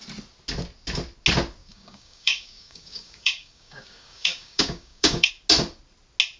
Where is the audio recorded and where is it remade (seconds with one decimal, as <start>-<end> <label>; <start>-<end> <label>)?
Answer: 0.0-1.6 recorded; 1.6-5.3 remade; 5.3-6.4 recorded